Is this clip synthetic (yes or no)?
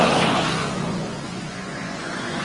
yes